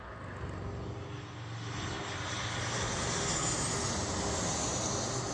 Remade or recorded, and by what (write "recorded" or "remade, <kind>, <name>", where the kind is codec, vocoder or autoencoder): recorded